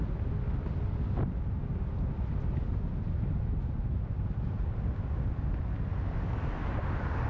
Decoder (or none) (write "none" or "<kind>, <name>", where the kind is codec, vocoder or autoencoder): none